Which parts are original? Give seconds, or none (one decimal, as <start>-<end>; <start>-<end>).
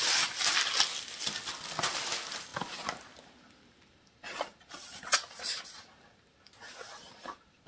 0.0-7.7